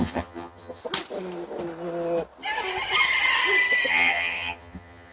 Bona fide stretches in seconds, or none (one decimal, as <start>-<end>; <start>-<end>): 0.8-3.9